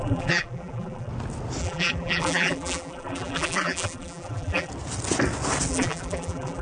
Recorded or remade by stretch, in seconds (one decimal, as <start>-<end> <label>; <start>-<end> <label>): 0.0-1.1 remade; 1.1-1.6 recorded; 1.6-4.7 remade; 4.7-5.7 recorded; 5.7-6.6 remade